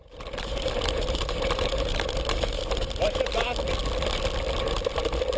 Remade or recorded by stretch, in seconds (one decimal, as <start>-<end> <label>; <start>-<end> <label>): 0.0-3.2 remade; 3.2-5.4 recorded